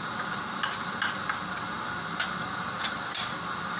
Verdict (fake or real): real